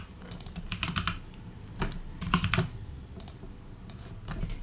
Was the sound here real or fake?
real